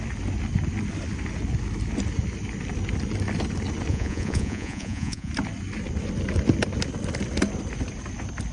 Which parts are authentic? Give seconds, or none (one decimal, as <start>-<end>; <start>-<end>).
0.0-3.9; 5.3-8.5